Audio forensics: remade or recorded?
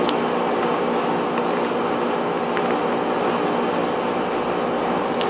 recorded